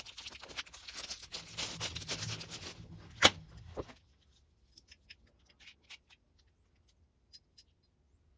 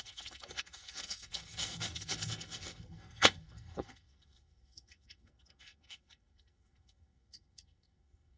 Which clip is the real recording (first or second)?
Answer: first